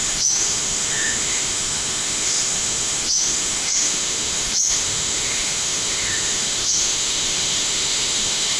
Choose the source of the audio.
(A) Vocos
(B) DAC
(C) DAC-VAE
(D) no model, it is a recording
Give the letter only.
C